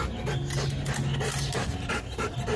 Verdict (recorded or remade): recorded